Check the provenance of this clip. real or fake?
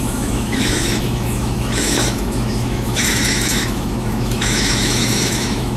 fake